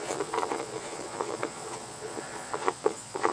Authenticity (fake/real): fake